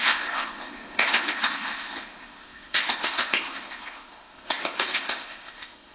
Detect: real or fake fake